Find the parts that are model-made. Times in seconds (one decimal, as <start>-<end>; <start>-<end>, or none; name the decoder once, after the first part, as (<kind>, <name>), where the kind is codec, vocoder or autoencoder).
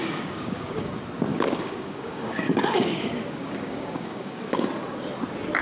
0.0-0.9 (codec, DAC); 1.3-4.6